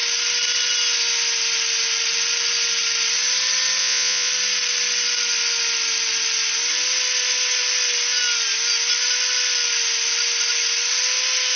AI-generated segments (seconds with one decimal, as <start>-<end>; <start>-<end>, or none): 3.8-4.3